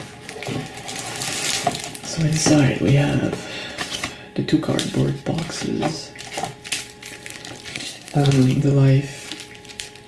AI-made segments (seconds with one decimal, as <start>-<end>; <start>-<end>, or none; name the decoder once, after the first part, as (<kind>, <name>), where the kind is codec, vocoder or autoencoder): 7.7-8.6 (codec, SNAC)